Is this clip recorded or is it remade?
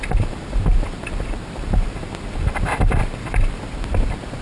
remade